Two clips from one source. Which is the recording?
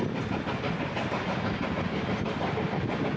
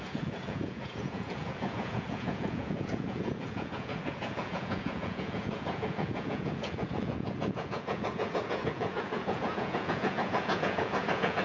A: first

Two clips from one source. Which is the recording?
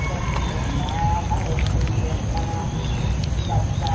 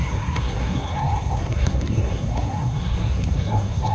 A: first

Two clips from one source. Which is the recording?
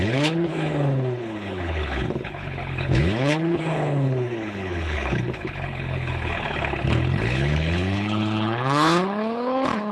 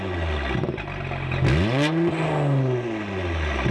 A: second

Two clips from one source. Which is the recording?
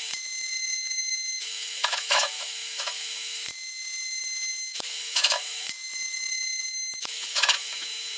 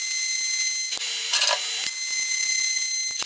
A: second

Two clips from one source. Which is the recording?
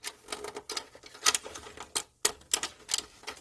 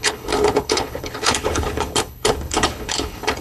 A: first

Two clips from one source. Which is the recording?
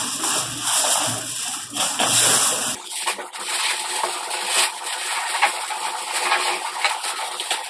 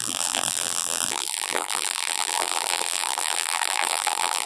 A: first